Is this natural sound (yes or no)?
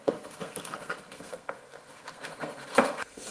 no